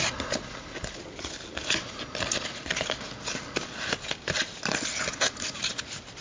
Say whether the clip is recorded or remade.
recorded